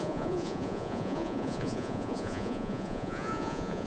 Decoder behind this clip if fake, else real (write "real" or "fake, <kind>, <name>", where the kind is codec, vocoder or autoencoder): fake, vocoder, Vocos